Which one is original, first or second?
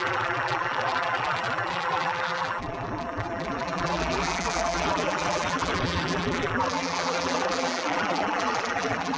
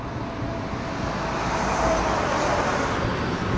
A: second